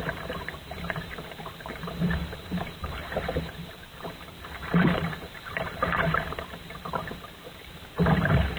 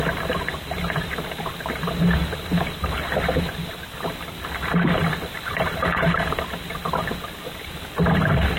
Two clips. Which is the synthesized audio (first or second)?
first